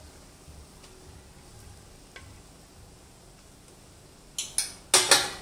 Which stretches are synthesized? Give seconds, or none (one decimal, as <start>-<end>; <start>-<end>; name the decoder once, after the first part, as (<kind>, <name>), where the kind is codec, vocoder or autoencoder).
none